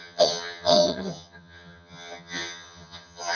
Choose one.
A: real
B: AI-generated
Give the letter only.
B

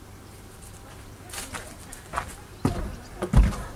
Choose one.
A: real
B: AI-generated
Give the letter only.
A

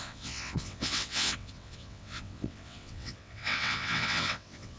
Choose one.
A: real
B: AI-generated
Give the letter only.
B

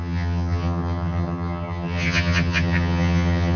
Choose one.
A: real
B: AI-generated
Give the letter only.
B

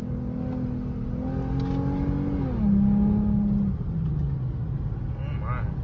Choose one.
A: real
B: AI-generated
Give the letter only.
A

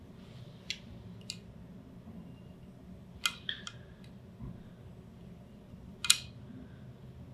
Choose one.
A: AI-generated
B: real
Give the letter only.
B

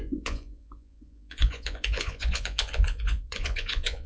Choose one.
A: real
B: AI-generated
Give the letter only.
B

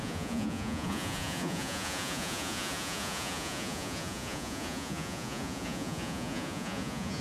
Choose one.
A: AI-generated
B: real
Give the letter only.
A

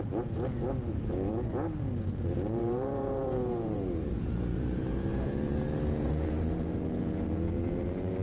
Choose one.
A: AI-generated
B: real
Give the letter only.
A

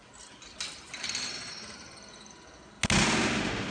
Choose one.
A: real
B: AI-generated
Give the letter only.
A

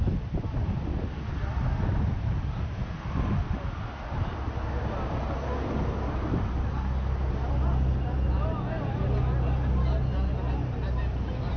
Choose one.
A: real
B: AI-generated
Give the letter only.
A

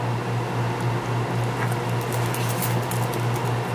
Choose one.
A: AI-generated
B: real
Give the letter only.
B